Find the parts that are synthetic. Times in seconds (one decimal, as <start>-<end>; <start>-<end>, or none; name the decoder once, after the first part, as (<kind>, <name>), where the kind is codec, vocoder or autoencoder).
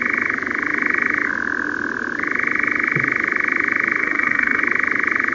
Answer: 4.0-4.6 (codec, SNAC)